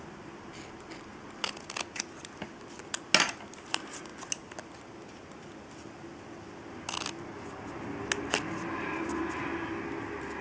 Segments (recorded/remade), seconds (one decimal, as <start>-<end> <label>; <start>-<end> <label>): 0.0-10.4 recorded